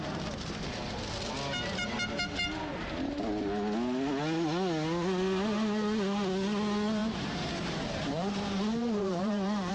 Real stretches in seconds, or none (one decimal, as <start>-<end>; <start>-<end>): 0.0-7.0

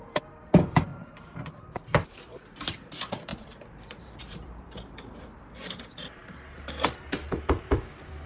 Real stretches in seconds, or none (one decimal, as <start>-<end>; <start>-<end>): 0.0-0.9; 1.7-3.3; 4.7-8.3

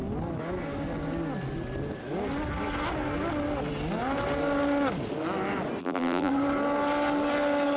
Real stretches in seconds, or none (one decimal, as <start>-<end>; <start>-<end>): 0.0-5.8; 6.3-7.8

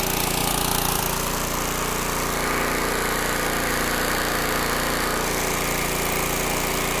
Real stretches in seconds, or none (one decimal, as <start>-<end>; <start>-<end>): 0.0-0.4; 1.0-7.0

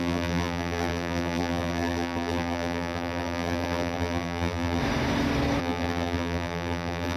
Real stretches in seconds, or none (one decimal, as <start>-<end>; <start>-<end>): 4.8-5.6